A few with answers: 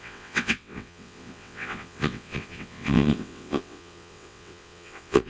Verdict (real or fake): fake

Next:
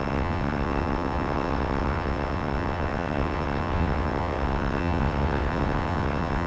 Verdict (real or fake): fake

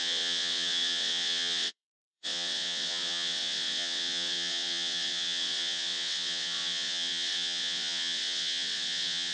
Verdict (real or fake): fake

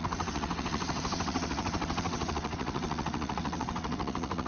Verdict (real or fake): fake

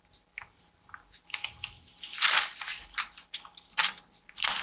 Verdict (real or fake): real